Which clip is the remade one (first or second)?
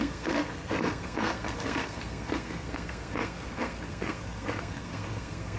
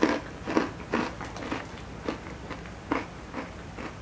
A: first